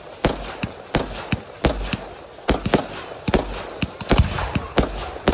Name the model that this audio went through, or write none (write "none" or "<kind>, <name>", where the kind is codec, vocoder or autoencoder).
none